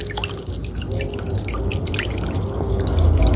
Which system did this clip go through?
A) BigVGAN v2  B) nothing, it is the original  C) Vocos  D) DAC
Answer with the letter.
B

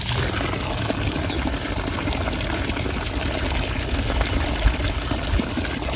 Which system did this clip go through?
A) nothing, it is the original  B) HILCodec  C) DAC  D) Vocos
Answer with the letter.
A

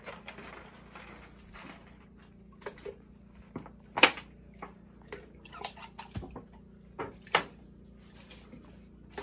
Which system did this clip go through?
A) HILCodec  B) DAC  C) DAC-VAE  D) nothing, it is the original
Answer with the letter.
D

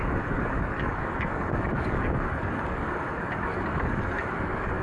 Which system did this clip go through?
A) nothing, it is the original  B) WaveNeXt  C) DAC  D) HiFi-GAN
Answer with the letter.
C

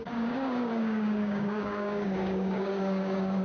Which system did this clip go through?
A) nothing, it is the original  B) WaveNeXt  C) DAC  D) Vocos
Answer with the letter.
C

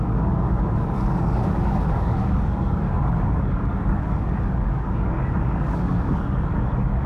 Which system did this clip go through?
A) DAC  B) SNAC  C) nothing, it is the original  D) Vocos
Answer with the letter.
A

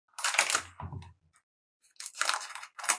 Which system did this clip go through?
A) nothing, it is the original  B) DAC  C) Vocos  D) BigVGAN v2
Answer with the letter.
A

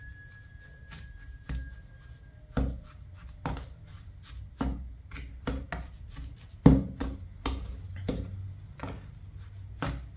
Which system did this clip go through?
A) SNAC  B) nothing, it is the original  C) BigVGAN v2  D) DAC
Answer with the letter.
B